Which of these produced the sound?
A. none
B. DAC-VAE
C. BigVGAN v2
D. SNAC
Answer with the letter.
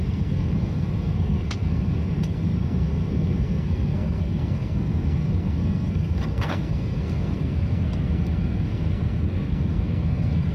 D